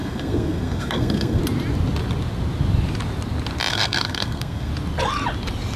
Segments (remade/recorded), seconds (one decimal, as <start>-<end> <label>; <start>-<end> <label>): 0.0-1.4 remade; 1.4-3.7 recorded; 3.7-4.7 remade; 4.7-5.8 recorded